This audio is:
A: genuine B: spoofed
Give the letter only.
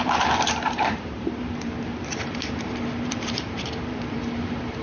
B